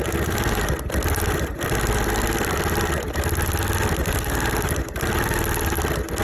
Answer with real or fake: real